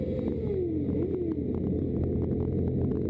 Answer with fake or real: real